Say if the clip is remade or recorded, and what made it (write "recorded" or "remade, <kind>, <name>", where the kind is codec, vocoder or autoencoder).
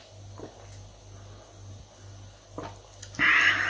recorded